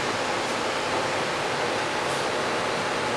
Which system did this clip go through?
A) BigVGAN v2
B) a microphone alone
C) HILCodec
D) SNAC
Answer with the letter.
B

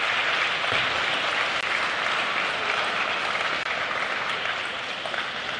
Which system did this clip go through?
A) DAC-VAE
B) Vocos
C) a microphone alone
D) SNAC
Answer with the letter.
C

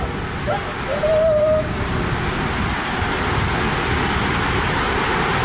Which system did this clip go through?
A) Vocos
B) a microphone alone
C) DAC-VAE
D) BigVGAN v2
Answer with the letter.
B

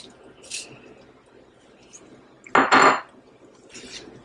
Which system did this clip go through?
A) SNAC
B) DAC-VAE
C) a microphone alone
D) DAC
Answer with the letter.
C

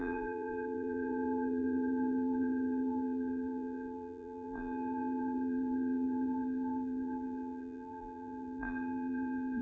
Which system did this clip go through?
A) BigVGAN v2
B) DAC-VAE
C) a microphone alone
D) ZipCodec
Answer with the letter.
A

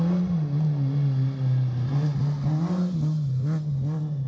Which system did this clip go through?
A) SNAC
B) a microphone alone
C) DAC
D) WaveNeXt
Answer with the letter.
B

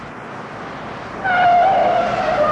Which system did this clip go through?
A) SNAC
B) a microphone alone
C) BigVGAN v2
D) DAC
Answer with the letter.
B